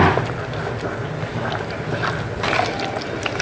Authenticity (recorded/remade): recorded